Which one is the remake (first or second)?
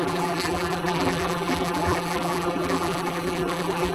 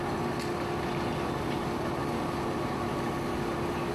first